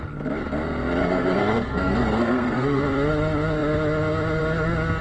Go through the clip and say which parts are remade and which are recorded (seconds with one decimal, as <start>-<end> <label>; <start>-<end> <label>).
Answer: 0.0-1.0 recorded; 1.0-2.8 remade; 2.8-5.0 recorded